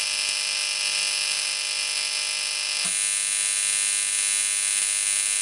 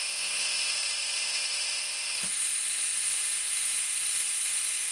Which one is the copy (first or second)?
second